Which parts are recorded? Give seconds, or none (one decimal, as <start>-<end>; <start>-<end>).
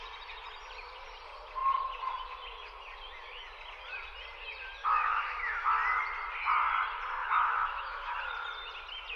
0.0-4.8; 5.7-7.2; 8.2-9.2